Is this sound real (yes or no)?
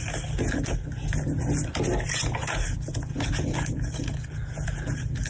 yes